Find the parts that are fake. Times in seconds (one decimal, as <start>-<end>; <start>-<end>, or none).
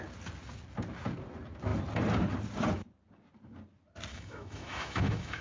4.1-5.4